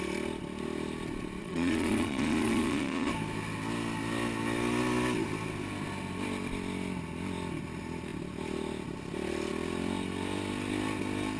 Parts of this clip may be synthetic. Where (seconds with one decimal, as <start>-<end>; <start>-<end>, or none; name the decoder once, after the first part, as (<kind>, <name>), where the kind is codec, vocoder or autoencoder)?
1.4-3.1 (vocoder, Vocos)